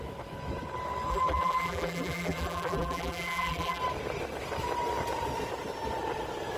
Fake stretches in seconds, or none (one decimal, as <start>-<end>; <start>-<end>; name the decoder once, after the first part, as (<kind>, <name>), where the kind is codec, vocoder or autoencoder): 1.1-3.8 (vocoder, BigVGAN v2)